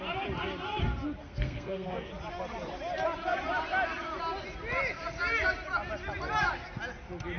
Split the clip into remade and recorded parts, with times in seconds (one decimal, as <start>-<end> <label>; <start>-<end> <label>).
0.0-1.2 recorded; 1.2-2.1 remade; 2.1-7.4 recorded